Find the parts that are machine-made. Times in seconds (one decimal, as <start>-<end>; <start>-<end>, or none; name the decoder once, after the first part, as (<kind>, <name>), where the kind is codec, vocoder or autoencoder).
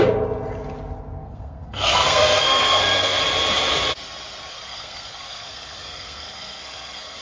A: 1.2-3.2 (codec, SNAC); 4.5-7.2